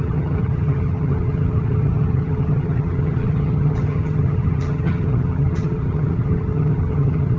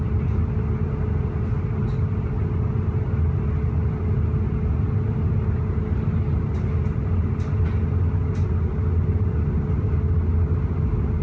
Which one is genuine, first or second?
second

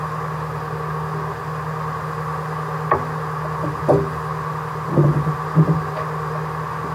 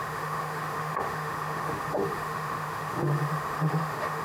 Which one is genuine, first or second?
first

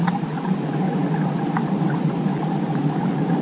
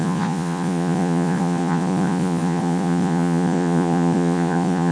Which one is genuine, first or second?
first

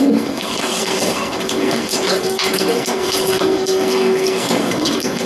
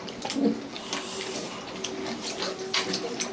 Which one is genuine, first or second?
second